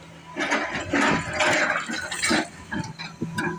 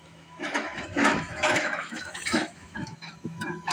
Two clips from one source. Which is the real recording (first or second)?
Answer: first